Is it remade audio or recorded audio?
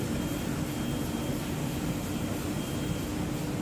recorded